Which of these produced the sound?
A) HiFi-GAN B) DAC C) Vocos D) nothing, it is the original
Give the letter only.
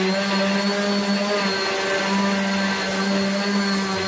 D